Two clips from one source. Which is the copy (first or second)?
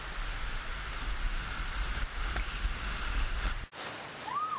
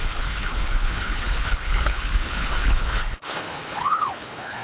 second